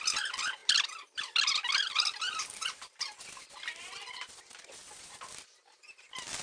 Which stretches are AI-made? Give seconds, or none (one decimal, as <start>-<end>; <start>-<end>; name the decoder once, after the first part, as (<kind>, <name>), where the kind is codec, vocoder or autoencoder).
0.6-4.4 (vocoder, BigVGAN v2)